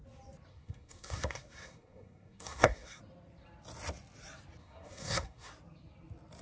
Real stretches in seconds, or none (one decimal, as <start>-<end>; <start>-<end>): 0.0-0.5; 3.0-4.6; 5.5-6.4